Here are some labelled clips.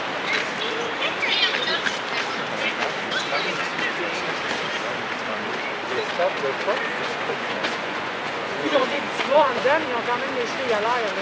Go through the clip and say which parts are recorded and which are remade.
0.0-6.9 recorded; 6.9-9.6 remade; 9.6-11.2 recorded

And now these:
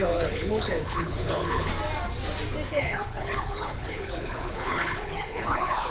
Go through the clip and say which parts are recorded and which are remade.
0.0-1.7 remade; 1.7-2.7 recorded; 2.7-5.9 remade

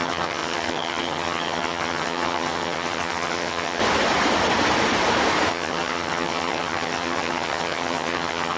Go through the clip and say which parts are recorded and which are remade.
0.0-3.8 remade; 3.8-5.5 recorded; 5.5-8.6 remade

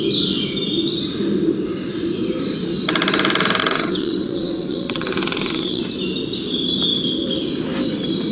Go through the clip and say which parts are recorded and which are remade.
0.0-3.6 recorded; 3.6-5.8 remade; 5.8-8.3 recorded

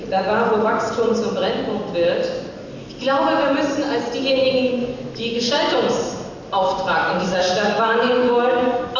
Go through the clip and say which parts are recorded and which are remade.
0.0-4.8 recorded; 4.8-5.5 remade; 5.5-7.0 recorded; 7.0-9.0 remade

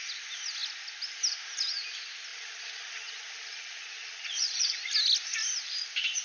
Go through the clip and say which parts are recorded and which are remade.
0.0-2.3 recorded; 2.3-4.9 remade; 4.9-6.2 recorded

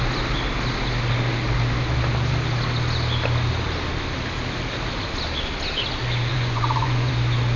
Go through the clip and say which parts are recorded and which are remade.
0.0-6.3 recorded; 6.3-7.1 remade; 7.1-7.6 recorded

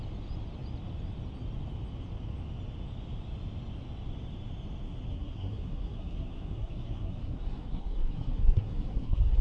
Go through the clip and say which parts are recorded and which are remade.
0.0-5.1 recorded; 5.1-9.4 remade